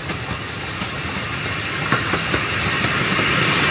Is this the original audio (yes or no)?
yes